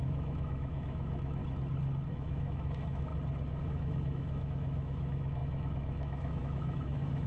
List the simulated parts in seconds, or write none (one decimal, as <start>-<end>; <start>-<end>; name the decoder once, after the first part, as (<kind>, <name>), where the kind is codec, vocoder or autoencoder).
0.0-1.4 (autoencoder, DAC-VAE); 2.1-3.1; 3.6-7.3